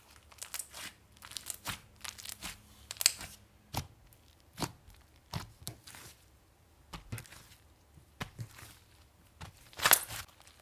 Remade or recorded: recorded